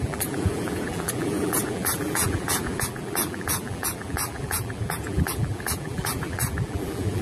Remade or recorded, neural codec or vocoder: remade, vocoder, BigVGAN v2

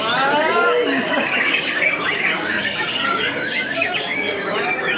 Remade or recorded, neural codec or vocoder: remade, codec, DAC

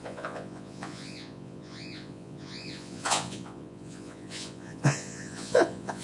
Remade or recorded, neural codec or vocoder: remade, vocoder, Vocos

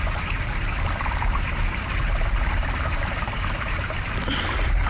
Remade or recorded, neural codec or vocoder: remade, vocoder, BigVGAN v2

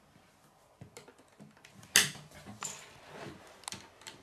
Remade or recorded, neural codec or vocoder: recorded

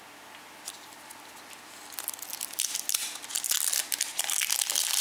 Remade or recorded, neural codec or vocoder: recorded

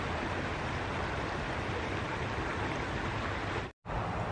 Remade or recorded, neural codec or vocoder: recorded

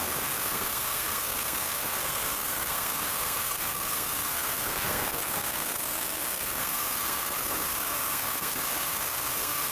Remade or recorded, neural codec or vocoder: remade, codec, SNAC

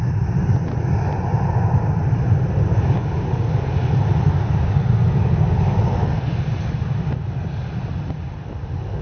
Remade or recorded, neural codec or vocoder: recorded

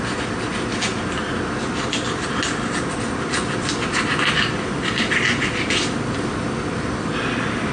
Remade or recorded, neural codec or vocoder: recorded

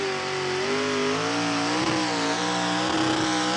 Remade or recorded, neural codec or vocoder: recorded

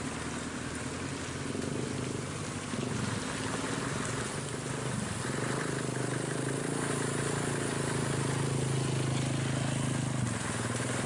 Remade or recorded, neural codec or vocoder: recorded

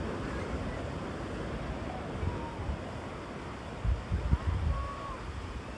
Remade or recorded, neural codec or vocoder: recorded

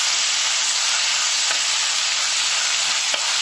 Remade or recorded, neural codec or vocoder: recorded